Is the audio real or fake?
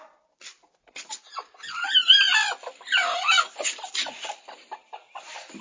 real